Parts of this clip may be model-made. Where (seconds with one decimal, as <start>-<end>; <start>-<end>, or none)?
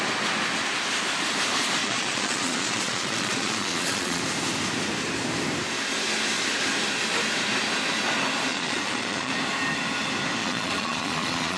1.8-4.2; 8.5-9.3; 10.4-11.6